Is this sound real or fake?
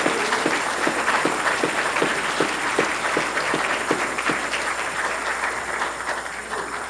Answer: real